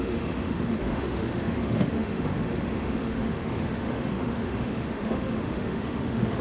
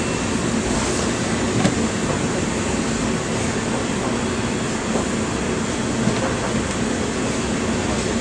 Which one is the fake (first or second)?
first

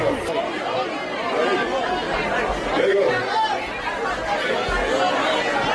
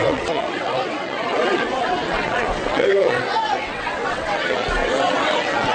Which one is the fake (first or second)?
second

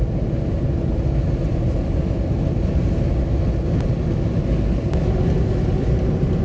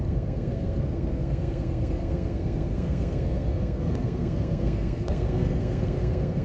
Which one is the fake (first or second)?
second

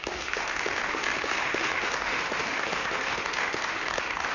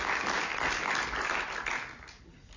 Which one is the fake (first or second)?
first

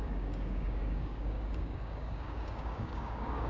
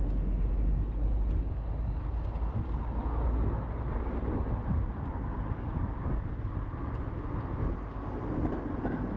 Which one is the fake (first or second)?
first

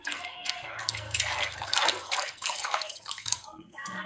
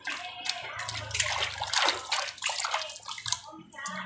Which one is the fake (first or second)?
first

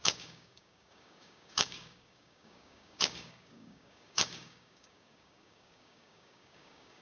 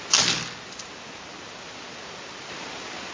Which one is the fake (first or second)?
first